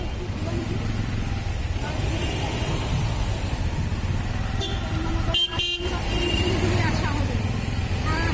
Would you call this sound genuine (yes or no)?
no